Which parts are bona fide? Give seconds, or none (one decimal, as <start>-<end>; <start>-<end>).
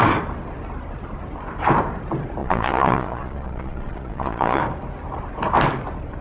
0.0-2.4; 4.6-6.2